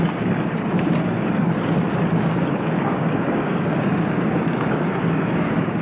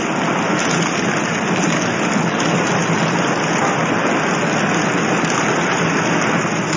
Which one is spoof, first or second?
first